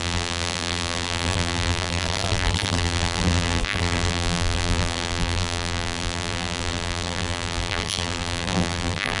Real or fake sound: fake